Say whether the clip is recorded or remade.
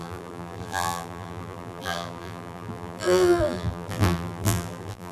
remade